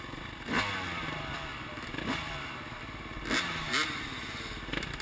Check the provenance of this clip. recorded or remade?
recorded